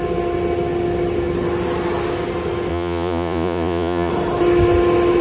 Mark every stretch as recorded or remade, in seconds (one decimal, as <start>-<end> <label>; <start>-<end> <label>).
0.0-2.7 recorded; 2.7-4.1 remade; 4.1-5.2 recorded